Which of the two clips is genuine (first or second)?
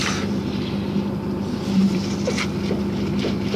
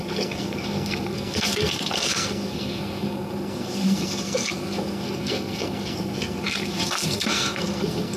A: first